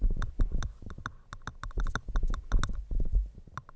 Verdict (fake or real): real